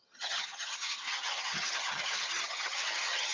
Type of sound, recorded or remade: remade